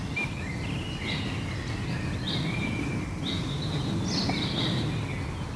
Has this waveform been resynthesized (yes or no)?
no